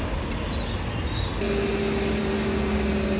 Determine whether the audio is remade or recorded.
recorded